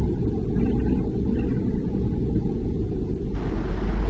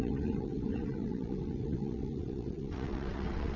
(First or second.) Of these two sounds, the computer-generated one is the second